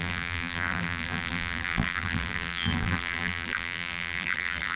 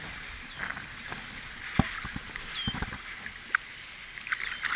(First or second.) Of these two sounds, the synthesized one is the first